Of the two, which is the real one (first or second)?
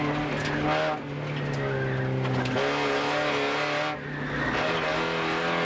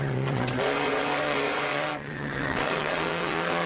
first